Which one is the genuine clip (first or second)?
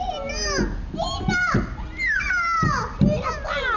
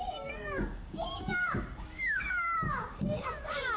first